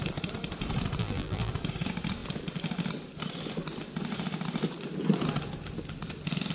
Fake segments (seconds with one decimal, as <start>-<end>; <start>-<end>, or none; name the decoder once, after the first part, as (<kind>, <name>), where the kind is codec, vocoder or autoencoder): 1.0-1.5 (vocoder, BigVGAN v2)